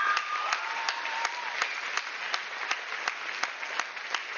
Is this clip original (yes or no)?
yes